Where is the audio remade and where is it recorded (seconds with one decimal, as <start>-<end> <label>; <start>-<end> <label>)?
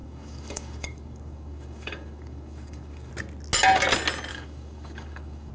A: 0.0-3.1 remade; 3.1-4.3 recorded; 4.3-5.5 remade